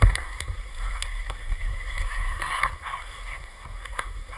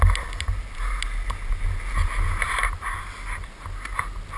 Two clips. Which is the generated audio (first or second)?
first